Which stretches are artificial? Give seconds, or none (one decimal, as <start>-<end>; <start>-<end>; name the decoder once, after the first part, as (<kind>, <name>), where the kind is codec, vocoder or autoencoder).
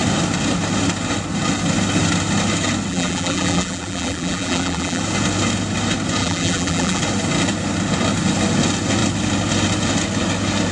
2.9-5.0 (vocoder, BigVGAN v2); 6.2-7.0